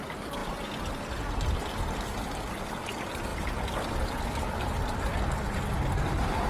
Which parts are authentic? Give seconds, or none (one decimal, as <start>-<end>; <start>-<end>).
0.0-6.5